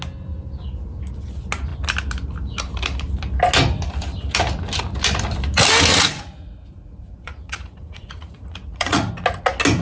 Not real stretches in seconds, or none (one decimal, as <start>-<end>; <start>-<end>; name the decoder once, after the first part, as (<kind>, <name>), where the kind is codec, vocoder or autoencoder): 5.9-9.1 (vocoder, Vocos)